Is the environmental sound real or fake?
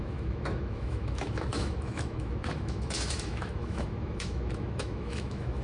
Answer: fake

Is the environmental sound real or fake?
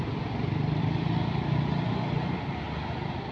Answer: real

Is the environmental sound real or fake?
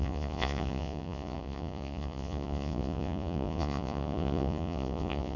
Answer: fake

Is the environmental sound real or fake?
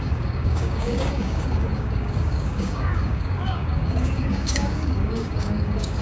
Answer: fake